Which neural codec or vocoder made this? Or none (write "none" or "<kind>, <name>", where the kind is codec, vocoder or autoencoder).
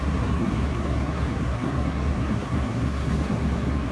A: codec, SNAC